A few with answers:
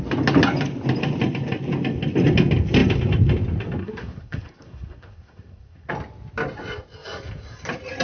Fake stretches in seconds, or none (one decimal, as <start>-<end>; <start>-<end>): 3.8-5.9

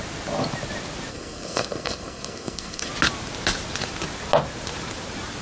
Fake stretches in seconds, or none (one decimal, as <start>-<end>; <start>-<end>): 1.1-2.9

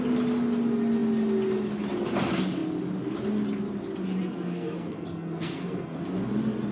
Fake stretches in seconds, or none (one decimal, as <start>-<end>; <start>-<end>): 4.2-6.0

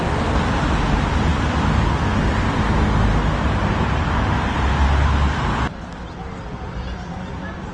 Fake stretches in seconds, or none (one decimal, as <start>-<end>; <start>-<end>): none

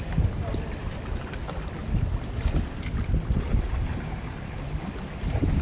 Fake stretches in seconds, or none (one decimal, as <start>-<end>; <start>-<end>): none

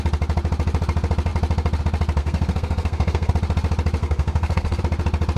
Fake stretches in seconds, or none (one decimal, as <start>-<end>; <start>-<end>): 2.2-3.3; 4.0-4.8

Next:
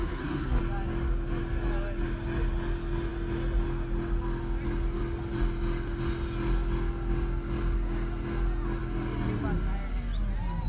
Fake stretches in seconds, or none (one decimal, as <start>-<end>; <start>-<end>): 0.0-0.6